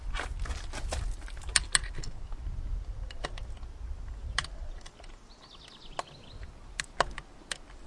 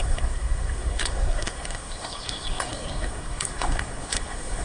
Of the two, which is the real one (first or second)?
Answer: first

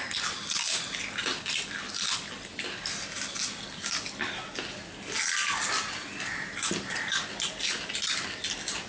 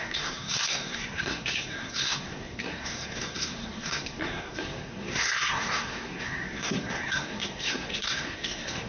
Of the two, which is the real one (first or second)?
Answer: first